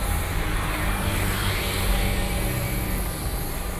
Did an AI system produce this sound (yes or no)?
no